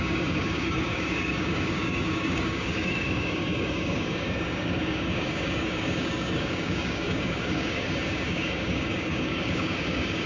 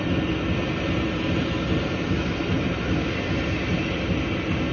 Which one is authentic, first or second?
second